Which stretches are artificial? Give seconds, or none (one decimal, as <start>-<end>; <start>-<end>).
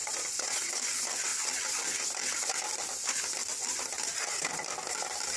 0.0-0.7